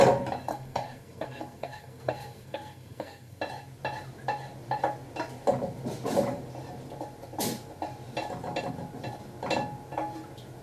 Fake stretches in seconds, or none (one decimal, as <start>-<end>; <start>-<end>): 0.5-3.4